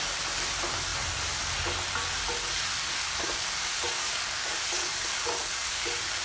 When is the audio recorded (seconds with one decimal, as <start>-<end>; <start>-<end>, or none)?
0.0-3.0